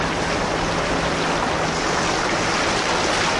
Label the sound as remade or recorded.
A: recorded